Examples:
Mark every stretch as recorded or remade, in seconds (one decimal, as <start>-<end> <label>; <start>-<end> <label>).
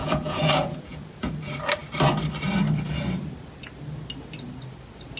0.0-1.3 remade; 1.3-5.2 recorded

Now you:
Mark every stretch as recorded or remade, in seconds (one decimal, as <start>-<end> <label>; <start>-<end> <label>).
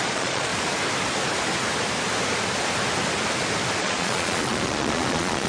0.0-0.5 remade; 0.5-3.8 recorded; 3.8-5.5 remade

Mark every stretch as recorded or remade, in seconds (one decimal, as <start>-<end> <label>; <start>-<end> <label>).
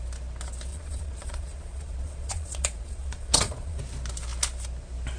0.0-0.7 recorded; 0.7-3.8 remade; 3.8-5.2 recorded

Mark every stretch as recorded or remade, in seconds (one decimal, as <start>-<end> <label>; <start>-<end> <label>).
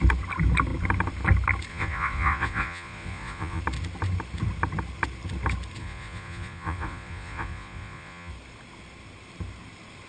0.0-1.7 recorded; 1.7-3.6 remade; 3.6-5.8 recorded; 5.8-8.3 remade; 8.3-10.1 recorded